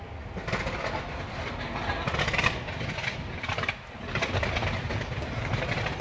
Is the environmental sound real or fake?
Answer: real